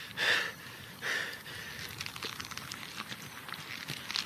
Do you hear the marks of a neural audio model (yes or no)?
no